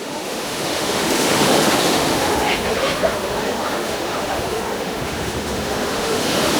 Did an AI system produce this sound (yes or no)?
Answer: yes